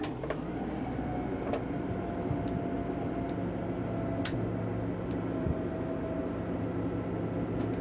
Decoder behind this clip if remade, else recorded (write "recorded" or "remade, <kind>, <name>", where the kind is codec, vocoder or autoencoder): recorded